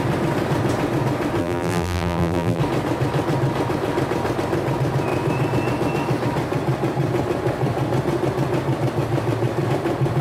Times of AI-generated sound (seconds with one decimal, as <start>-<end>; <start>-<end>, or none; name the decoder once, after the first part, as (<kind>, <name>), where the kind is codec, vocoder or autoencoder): 1.4-2.6 (vocoder, BigVGAN v2)